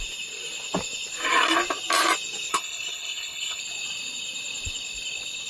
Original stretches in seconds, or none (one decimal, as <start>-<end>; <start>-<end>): 0.0-2.5; 3.6-5.5